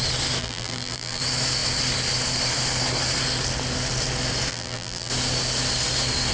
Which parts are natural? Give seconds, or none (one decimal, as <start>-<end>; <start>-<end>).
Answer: 0.0-0.4; 1.2-4.5; 5.1-6.3